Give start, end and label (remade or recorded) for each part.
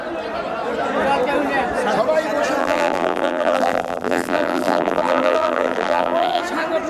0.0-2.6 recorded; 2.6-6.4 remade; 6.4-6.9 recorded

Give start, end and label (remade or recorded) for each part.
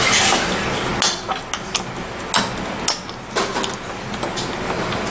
0.0-5.1 recorded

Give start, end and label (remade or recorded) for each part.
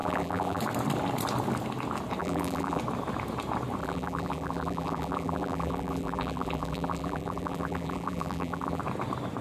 0.0-0.6 remade; 0.6-2.2 recorded; 2.2-2.8 remade; 2.8-3.8 recorded; 3.8-8.8 remade; 8.8-9.4 recorded